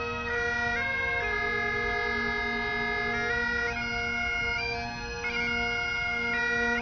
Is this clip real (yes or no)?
yes